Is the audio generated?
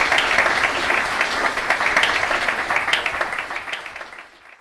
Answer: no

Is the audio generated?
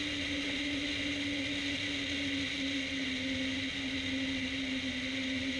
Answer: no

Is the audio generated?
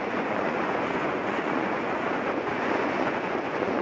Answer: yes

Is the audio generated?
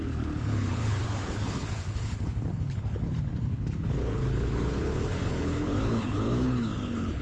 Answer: yes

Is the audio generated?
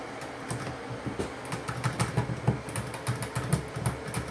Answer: no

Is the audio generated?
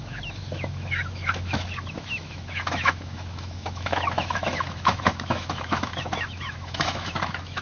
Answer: yes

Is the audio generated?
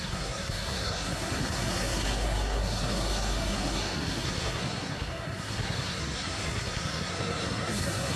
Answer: yes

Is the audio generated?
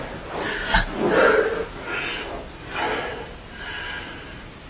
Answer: no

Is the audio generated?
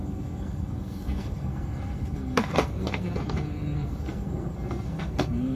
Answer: yes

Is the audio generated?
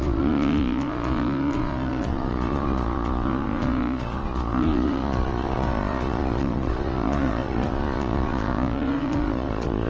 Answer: yes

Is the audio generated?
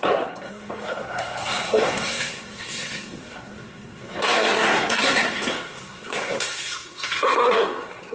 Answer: yes